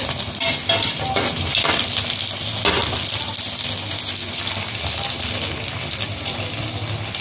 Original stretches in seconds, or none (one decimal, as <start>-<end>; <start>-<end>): 0.0-7.2

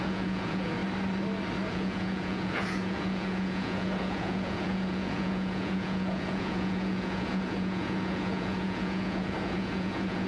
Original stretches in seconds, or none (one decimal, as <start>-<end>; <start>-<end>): 0.8-1.7

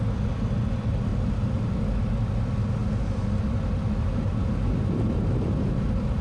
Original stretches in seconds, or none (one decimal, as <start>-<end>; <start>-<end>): 0.0-6.2

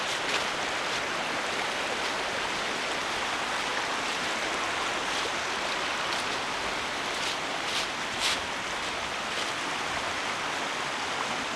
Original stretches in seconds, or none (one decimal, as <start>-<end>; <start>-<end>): 0.0-11.6